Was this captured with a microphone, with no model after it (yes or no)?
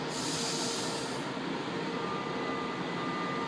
yes